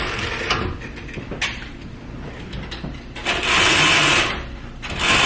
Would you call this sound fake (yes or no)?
no